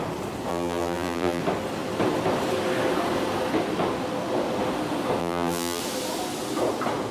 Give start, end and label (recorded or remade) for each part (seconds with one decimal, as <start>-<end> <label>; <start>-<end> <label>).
0.0-0.5 recorded; 0.5-1.4 remade; 1.4-5.2 recorded; 5.2-5.8 remade; 5.8-7.1 recorded